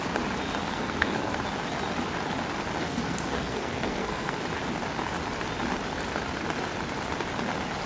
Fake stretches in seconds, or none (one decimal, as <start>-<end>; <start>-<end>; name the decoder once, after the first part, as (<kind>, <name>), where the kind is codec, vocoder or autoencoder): 0.6-1.4 (codec, SNAC); 2.8-4.4